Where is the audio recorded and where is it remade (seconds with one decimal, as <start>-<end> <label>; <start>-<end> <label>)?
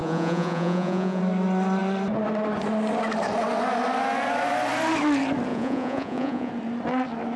0.0-1.2 remade; 1.2-5.5 recorded; 5.5-6.5 remade; 6.5-7.4 recorded